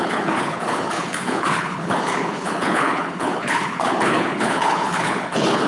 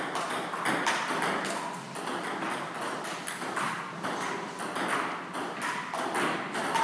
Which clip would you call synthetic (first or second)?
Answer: first